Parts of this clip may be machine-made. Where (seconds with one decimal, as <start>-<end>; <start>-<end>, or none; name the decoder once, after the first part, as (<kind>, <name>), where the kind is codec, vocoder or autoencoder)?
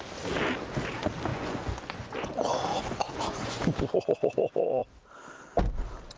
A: 1.3-2.3 (vocoder, Vocos); 2.7-3.6